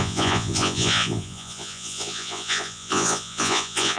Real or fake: fake